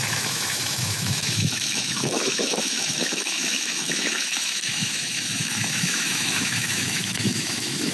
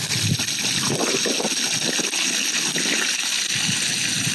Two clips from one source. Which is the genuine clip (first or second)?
second